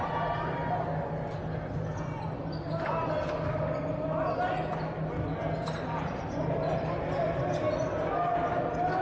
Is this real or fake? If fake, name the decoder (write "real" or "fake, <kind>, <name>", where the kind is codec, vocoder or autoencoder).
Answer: real